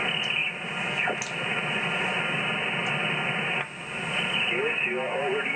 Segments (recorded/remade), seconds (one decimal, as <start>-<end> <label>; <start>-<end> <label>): 0.0-5.6 recorded